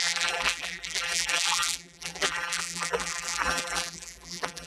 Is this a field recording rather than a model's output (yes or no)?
no